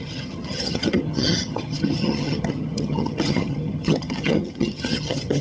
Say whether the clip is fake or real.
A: fake